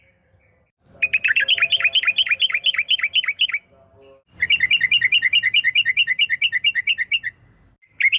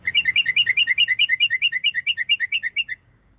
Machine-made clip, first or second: second